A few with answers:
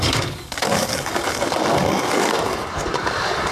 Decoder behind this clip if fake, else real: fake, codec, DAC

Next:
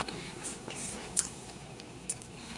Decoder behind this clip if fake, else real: fake, codec, SNAC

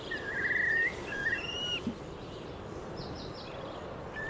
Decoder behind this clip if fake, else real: fake, vocoder, BigVGAN v2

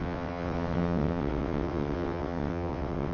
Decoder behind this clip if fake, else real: fake, vocoder, WaveNeXt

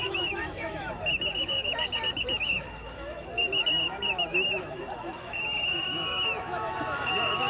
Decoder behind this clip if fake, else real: fake, autoencoder, DAC-VAE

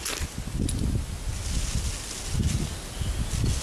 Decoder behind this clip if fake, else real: real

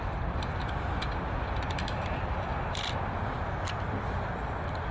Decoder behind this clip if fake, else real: real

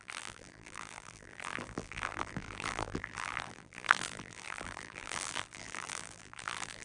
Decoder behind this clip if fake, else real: fake, vocoder, BigVGAN v2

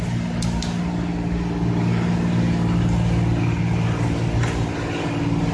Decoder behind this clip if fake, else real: real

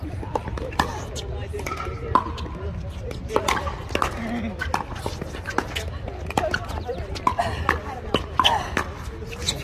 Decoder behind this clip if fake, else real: real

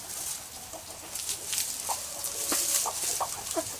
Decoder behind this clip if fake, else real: real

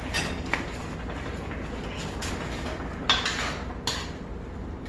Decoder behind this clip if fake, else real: real